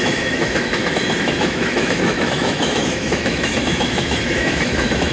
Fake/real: fake